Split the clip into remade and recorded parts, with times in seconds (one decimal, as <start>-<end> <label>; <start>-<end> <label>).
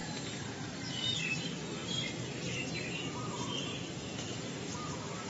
0.0-5.3 recorded